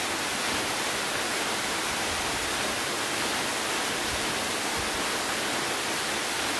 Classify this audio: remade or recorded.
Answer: recorded